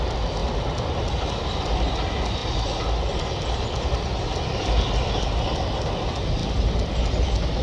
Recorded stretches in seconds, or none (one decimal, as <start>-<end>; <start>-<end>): 0.0-7.6